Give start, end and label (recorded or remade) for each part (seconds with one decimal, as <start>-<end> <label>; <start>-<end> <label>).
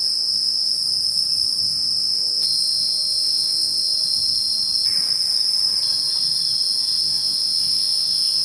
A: 0.0-0.7 remade; 0.7-1.6 recorded; 1.6-3.9 remade; 3.9-7.0 recorded; 7.0-8.4 remade